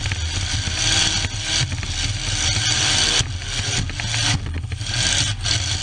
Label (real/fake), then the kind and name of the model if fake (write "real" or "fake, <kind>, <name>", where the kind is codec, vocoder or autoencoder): real